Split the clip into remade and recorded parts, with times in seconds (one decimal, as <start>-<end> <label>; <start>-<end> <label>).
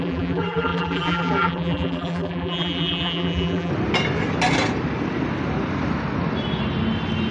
0.0-3.7 remade; 3.7-7.3 recorded